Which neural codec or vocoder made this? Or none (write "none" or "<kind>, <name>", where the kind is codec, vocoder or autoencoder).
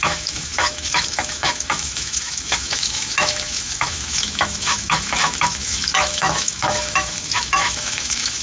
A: autoencoder, DAC-VAE